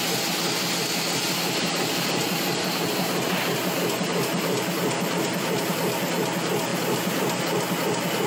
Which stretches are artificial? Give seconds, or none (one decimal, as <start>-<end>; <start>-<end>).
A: 1.7-5.8; 6.7-7.4